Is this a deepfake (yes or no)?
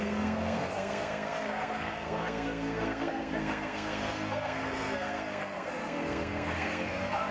yes